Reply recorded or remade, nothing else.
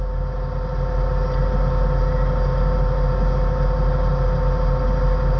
recorded